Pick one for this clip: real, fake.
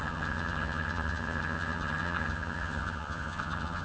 fake